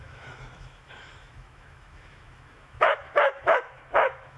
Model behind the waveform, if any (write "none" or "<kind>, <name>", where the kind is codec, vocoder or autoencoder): autoencoder, DAC-VAE